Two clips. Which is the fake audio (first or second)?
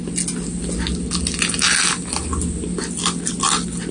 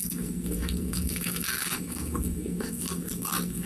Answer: second